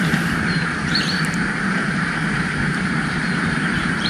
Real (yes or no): no